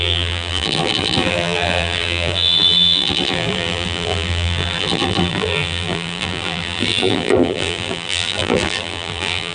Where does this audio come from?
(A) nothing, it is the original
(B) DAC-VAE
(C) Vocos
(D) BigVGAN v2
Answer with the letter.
D